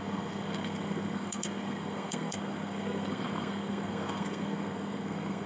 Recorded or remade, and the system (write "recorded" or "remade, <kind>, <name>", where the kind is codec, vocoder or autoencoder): remade, codec, SNAC